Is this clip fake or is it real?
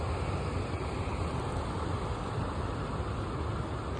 real